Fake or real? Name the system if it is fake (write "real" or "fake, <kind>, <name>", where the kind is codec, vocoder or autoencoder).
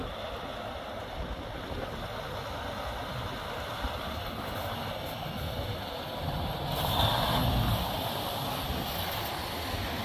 real